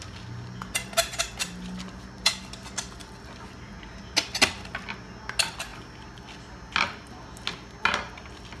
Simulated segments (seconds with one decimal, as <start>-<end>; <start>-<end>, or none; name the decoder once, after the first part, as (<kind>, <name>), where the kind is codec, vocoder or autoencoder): none